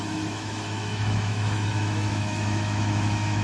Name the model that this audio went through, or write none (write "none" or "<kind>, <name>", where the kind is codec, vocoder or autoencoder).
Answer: autoencoder, DAC-VAE